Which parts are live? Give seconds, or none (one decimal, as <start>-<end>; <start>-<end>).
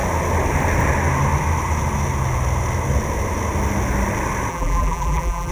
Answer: 0.0-4.5